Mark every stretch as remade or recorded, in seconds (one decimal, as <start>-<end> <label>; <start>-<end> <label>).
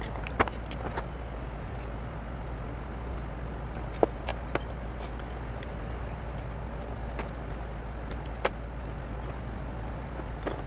0.0-10.7 recorded